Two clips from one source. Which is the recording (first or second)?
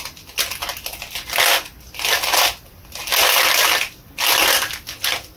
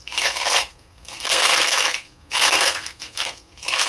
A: first